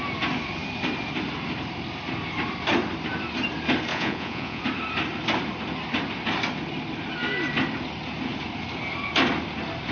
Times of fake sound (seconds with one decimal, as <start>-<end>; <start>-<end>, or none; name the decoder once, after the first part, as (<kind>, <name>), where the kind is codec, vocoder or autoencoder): 3.9-4.6 (vocoder, Vocos)